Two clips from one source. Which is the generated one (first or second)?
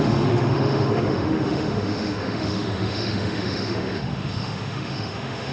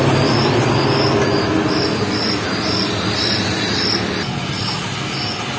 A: first